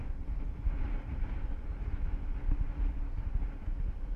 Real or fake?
real